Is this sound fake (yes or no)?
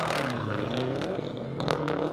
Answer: yes